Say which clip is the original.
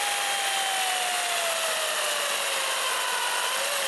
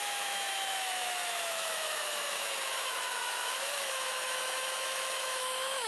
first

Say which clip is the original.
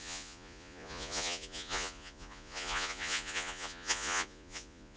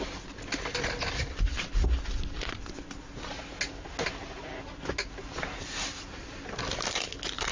second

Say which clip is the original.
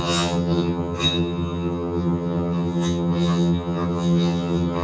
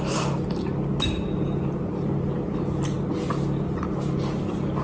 second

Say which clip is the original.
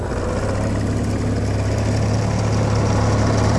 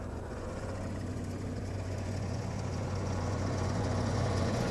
first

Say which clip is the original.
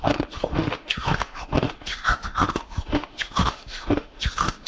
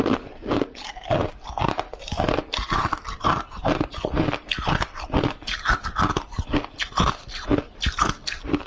second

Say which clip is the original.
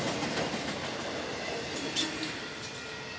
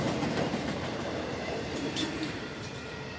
first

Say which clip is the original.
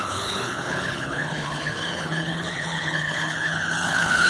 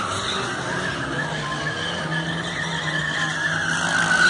second